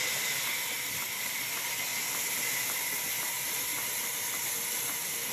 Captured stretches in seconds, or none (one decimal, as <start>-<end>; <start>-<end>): 0.0-5.3